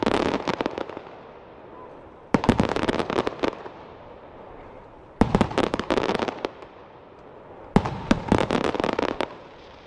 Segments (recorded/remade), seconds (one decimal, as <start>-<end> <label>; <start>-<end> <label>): 0.0-0.8 remade; 0.8-2.0 recorded; 2.0-6.8 remade; 6.8-7.9 recorded; 7.9-9.9 remade